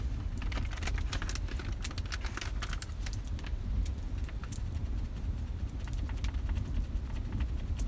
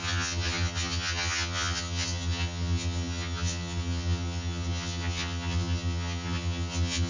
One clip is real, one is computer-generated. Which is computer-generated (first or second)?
second